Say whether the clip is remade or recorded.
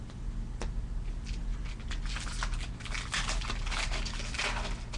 recorded